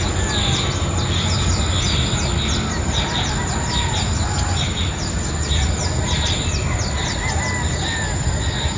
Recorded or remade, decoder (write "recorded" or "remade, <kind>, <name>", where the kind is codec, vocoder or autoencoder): recorded